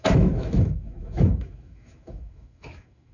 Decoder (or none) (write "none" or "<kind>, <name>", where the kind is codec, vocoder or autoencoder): autoencoder, DAC-VAE